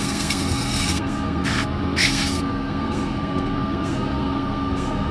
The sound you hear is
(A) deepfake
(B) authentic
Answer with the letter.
A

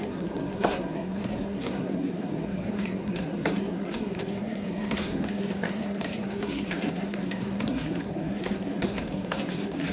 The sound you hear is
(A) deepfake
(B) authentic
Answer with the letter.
A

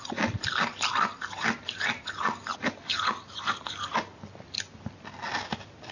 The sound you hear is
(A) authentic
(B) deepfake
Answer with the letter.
A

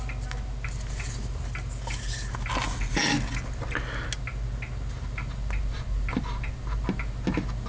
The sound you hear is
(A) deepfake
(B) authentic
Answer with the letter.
B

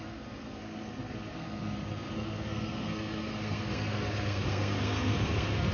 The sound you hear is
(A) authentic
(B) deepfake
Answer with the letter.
B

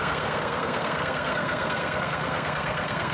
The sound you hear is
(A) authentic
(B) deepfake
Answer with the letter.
B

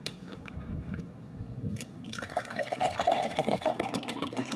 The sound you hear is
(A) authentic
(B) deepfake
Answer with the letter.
B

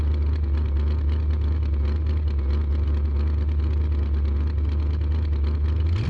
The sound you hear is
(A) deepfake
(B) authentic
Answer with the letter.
B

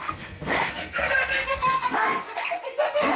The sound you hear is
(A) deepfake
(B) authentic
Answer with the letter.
A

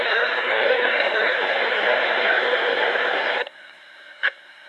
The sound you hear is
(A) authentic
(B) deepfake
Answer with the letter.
B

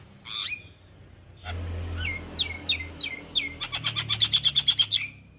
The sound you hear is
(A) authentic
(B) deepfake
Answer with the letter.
A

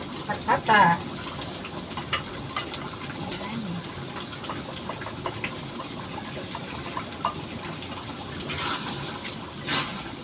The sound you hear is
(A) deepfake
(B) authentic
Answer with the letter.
B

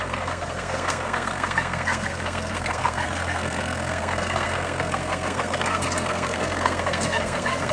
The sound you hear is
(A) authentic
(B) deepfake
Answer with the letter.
B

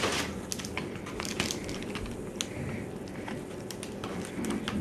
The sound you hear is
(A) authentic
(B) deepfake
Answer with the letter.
A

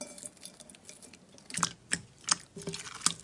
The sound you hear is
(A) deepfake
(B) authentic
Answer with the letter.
B